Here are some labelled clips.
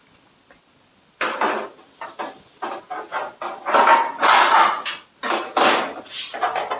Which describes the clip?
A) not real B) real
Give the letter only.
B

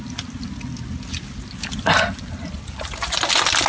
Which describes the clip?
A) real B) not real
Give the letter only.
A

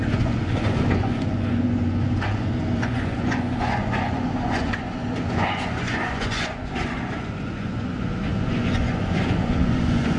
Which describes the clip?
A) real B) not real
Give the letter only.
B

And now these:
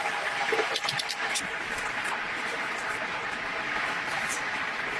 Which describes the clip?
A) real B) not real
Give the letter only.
A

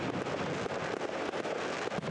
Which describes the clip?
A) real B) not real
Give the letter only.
A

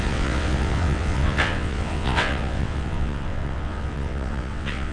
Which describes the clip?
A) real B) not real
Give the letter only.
B